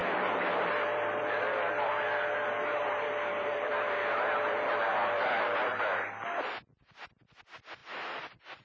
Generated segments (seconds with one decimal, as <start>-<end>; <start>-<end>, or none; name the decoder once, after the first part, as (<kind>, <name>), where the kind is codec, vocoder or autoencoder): 0.0-1.9 (vocoder, BigVGAN v2); 3.3-6.1